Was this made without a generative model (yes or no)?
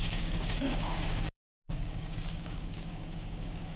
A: no